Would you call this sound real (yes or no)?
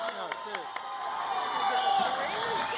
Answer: yes